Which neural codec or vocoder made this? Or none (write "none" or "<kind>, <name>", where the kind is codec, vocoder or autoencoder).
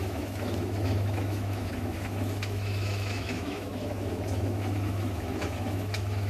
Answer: autoencoder, DAC-VAE